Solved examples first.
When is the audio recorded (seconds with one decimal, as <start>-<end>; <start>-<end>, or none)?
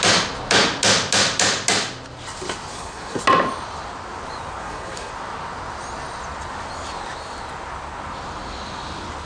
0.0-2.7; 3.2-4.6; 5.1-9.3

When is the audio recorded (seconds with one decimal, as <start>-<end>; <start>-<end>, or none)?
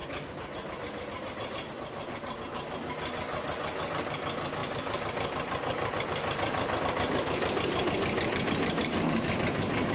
0.0-9.9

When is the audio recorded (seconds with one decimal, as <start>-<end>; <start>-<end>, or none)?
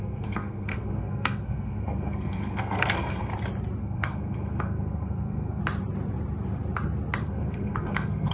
3.3-3.8; 5.6-7.2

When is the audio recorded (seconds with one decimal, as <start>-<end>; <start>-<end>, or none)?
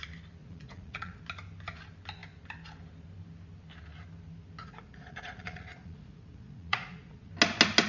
0.0-0.4; 1.2-4.6; 7.3-7.9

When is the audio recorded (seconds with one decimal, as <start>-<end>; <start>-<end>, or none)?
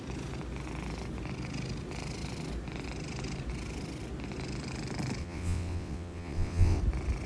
0.0-5.2; 6.8-7.3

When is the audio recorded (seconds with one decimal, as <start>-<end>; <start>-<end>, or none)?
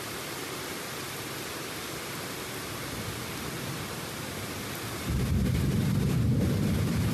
0.0-7.1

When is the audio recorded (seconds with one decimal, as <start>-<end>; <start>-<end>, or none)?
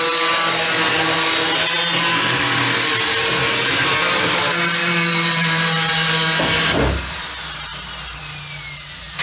0.0-4.8; 5.9-9.2